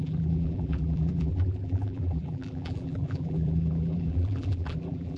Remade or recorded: remade